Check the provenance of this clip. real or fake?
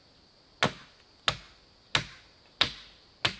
real